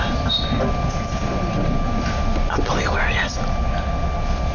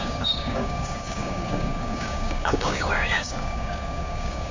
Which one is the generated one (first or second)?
second